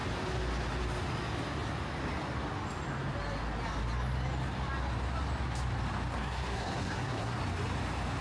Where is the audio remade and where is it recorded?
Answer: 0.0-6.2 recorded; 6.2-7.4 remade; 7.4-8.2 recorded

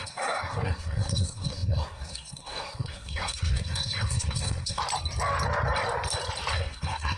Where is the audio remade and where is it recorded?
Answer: 0.0-4.8 remade; 4.8-6.5 recorded; 6.5-7.2 remade

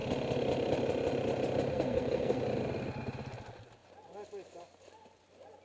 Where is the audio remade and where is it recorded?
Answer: 0.0-1.7 recorded; 1.7-2.4 remade; 2.4-5.6 recorded

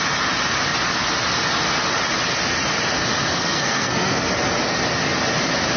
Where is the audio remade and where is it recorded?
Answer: 0.0-3.3 recorded; 3.3-4.3 remade; 4.3-5.8 recorded